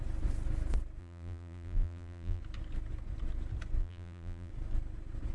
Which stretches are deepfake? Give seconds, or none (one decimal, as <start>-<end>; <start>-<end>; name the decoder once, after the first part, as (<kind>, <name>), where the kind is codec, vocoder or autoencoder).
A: 1.0-2.4 (vocoder, BigVGAN v2); 3.8-4.5